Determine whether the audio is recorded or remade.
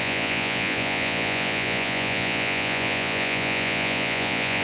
remade